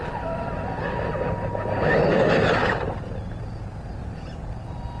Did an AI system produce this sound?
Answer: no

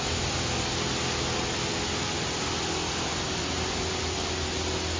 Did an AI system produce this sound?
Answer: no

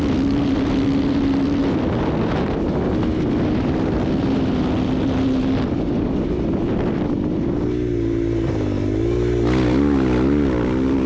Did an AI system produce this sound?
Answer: no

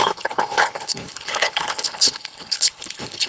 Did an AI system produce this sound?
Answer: yes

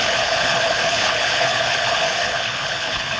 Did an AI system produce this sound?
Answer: yes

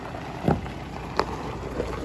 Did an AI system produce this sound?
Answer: no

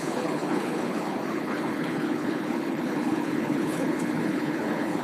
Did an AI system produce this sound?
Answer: yes